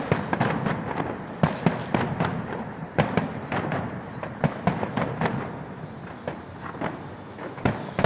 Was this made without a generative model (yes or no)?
yes